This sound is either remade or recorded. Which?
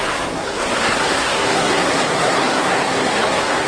remade